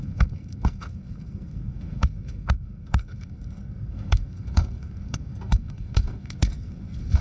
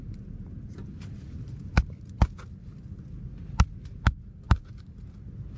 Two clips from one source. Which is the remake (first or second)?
first